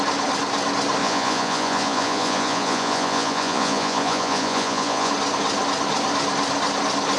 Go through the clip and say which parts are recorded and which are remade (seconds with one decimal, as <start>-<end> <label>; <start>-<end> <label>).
0.0-1.0 recorded; 1.0-5.1 remade; 5.1-7.2 recorded